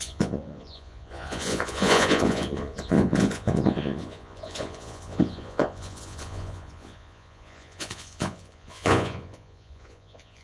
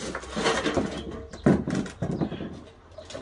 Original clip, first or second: second